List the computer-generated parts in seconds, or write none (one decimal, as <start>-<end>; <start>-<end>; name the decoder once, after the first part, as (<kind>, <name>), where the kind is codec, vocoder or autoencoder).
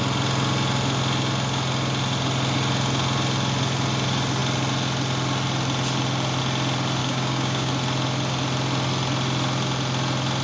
7.0-7.7 (codec, DAC)